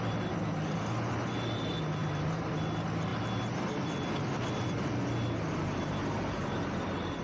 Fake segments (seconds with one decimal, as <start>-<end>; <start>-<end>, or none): 2.0-2.6